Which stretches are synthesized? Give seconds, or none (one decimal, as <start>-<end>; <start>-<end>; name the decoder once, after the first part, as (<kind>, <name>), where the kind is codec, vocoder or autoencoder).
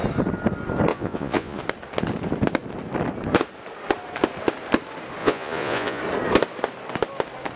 0.9-1.6 (vocoder, Vocos); 5.2-6.0